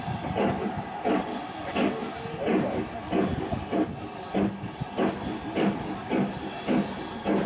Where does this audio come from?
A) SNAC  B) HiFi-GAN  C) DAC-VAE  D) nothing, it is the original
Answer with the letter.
D